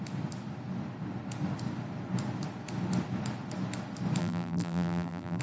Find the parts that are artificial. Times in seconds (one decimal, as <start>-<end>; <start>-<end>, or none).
4.2-5.4